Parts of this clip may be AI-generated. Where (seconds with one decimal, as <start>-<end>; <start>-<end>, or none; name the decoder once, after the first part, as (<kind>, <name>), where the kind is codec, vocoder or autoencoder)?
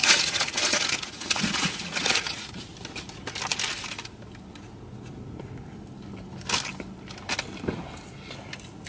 0.0-2.6 (vocoder, Vocos)